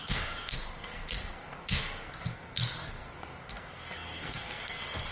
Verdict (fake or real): fake